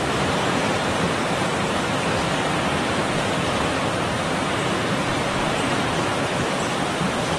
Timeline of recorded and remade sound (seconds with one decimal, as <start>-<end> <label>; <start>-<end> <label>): 0.0-7.4 remade